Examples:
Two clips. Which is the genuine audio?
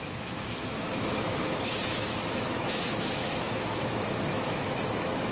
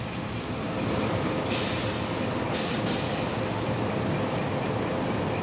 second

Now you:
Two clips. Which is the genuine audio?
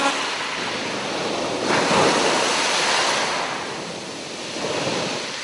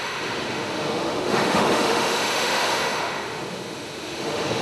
first